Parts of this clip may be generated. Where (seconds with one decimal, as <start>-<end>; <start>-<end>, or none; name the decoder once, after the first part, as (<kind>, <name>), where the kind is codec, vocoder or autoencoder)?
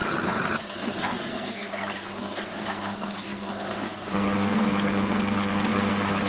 0.6-6.3 (codec, SNAC)